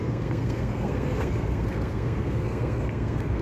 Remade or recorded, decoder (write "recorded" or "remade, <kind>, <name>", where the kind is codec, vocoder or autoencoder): remade, codec, SNAC